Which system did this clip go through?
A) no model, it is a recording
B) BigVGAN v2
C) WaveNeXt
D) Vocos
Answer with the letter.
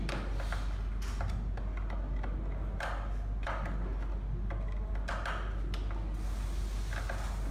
A